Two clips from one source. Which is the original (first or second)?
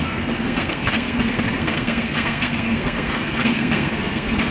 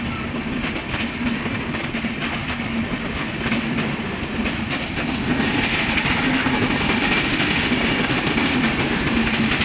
second